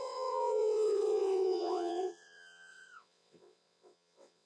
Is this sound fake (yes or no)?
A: yes